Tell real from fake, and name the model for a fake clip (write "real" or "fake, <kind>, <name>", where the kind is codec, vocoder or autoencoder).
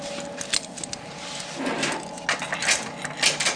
real